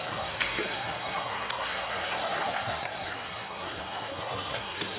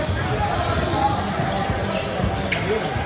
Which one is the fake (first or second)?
first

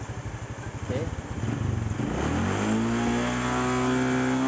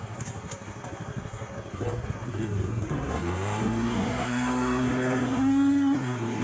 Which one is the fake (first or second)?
second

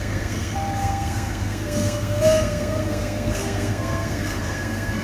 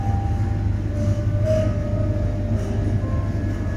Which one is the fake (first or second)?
first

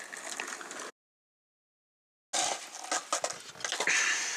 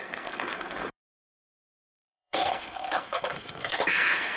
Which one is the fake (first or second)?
second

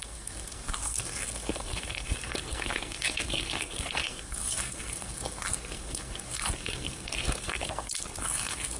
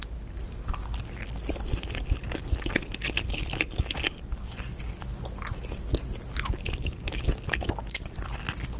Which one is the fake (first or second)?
first